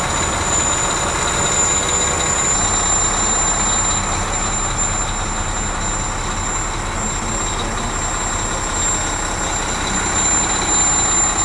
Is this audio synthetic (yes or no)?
no